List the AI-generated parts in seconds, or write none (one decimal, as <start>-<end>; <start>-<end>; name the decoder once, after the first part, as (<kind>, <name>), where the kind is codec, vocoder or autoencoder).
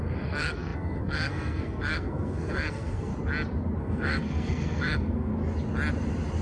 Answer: 0.0-3.1 (codec, SNAC); 3.8-5.3